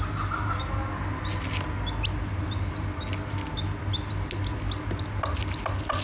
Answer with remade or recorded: recorded